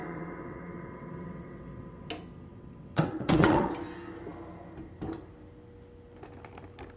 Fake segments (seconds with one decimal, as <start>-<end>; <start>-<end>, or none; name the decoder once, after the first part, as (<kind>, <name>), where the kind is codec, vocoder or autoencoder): 0.0-2.1 (vocoder, WaveNeXt); 2.5-3.7